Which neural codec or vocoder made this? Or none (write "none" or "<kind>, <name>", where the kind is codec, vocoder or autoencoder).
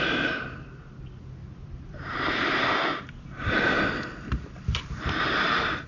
none